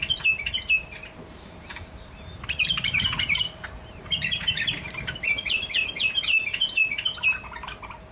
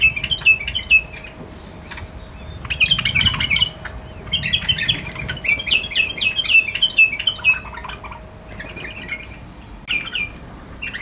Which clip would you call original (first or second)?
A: second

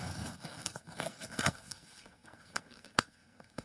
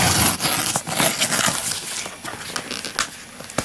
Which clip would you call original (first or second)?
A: second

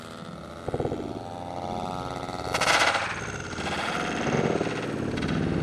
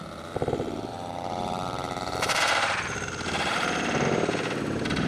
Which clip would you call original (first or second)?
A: first